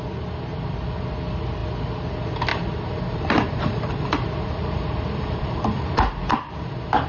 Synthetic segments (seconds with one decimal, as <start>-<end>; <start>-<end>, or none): 2.5-6.5